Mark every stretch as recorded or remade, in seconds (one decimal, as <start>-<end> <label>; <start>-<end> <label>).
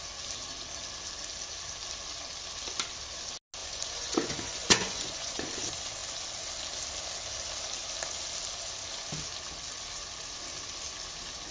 0.0-3.6 recorded; 3.6-5.6 remade; 5.6-11.5 recorded